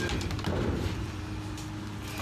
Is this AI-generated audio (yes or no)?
no